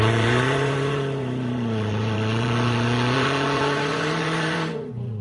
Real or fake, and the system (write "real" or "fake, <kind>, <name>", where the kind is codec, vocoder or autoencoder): fake, vocoder, Vocos